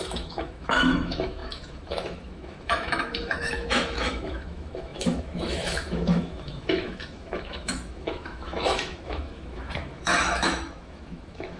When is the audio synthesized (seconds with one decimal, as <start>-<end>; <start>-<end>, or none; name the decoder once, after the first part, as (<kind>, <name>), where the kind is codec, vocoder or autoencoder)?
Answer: 0.0-11.6 (autoencoder, DAC-VAE)